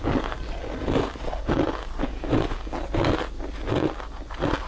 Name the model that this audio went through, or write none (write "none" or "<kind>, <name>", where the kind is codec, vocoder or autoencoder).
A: none